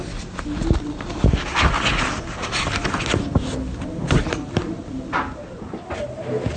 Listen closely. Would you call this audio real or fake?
real